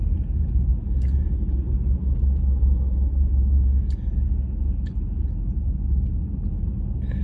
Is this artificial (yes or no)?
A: no